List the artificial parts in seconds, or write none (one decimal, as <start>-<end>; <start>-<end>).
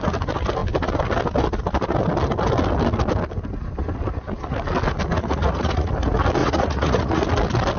5.2-5.9; 6.4-7.2